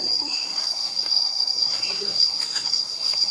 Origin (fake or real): fake